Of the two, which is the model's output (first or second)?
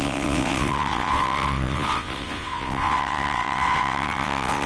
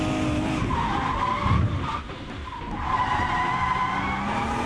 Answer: first